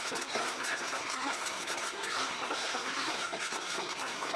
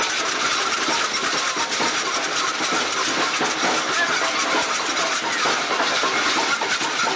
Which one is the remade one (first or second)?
first